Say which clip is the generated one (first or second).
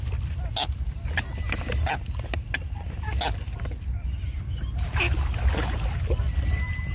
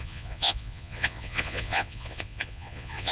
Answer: second